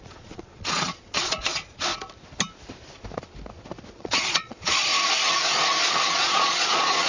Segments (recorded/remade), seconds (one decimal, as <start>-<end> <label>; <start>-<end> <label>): 0.0-1.9 remade; 1.9-3.9 recorded; 3.9-4.9 remade; 4.9-6.1 recorded; 6.1-7.1 remade